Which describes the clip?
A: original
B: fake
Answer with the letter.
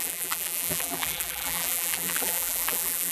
B